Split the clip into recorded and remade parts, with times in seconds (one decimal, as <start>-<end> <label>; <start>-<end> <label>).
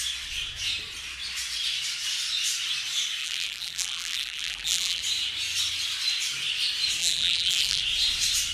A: 0.0-3.2 recorded; 3.2-5.0 remade; 5.0-7.0 recorded; 7.0-7.8 remade; 7.8-8.5 recorded